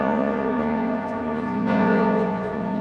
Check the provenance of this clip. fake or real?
fake